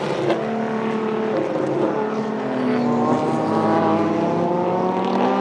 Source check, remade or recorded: recorded